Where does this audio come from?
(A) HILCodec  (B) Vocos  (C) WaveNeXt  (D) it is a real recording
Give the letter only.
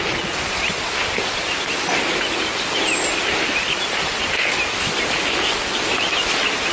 D